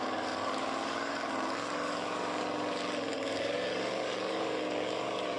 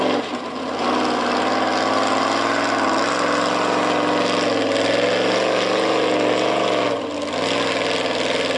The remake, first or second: first